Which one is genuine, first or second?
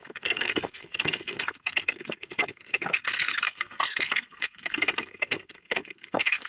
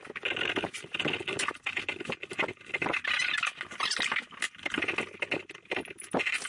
second